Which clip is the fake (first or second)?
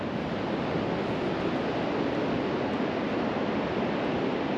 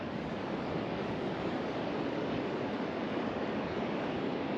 second